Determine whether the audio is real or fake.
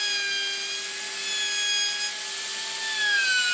real